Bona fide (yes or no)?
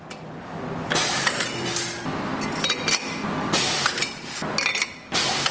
yes